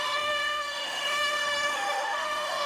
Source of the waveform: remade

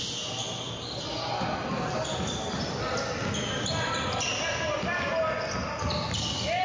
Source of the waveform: recorded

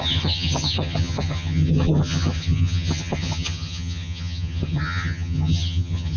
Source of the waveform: remade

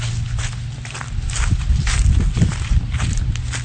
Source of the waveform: recorded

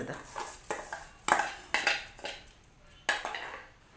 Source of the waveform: recorded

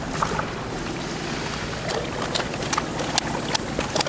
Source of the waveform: recorded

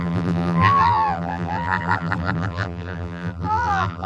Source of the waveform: remade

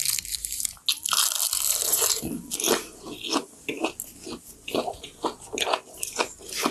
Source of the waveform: recorded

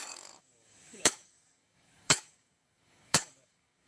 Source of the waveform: remade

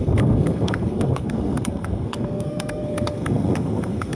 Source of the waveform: remade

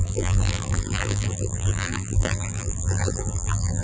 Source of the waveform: remade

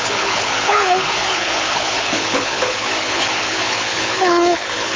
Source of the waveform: remade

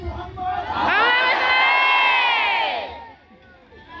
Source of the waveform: recorded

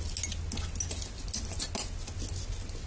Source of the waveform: recorded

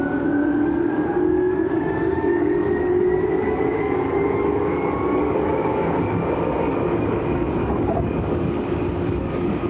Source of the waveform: remade